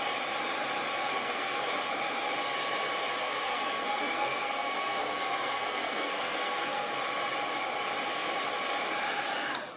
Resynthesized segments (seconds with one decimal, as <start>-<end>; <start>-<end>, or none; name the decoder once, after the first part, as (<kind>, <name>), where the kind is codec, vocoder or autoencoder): 1.0-1.6 (codec, SNAC); 3.2-6.9